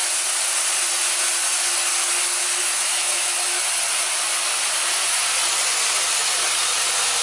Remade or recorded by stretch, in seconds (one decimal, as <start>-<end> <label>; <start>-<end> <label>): 0.0-2.4 recorded; 2.4-3.8 remade; 3.8-7.2 recorded